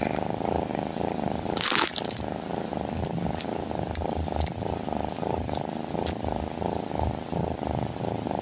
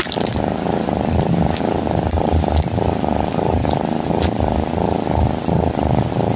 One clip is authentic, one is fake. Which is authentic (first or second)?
first